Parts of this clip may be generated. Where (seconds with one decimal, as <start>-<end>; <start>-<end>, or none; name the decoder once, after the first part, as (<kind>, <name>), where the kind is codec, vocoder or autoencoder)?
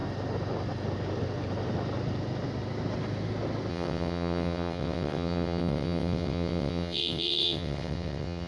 3.7-8.5 (vocoder, WaveNeXt)